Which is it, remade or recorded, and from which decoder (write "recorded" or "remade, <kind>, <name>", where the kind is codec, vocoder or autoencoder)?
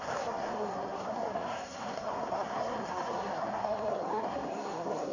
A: remade, codec, SNAC